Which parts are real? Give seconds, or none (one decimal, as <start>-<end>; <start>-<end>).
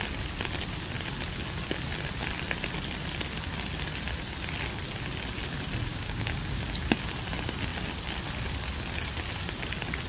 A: 0.0-5.9; 6.6-10.1